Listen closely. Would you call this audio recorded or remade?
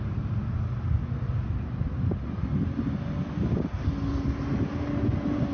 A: recorded